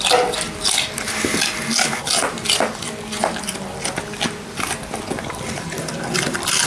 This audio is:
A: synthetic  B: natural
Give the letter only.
B